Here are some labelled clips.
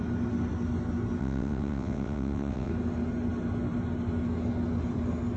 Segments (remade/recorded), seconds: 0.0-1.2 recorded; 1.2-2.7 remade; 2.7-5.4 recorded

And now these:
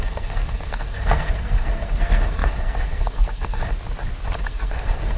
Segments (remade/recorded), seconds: 0.0-3.6 remade; 3.6-4.4 recorded; 4.4-5.2 remade

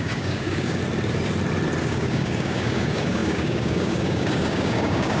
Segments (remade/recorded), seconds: 0.0-0.8 remade; 0.8-1.8 recorded; 1.8-5.2 remade

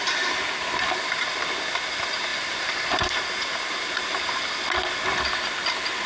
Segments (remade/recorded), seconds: 0.0-1.3 remade; 1.3-2.3 recorded; 2.3-4.4 remade; 4.4-6.1 recorded